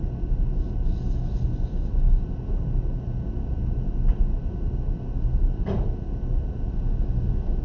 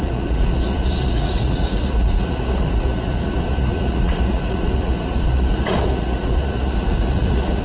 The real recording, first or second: first